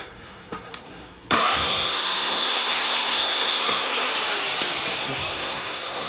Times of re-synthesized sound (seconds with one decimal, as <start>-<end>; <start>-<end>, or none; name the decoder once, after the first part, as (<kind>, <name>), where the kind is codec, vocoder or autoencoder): 0.0-4.1 (codec, SNAC); 5.0-6.1